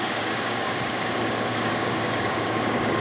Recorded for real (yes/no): no